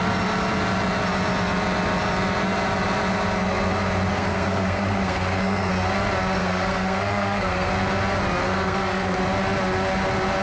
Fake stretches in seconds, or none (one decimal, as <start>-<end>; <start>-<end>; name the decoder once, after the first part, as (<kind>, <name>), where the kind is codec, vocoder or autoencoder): 4.1-5.7 (codec, SNAC); 6.4-7.7; 8.4-9.2